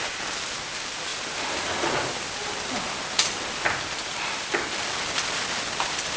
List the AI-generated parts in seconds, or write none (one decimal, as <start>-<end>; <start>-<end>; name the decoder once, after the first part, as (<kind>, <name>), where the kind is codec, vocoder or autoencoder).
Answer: none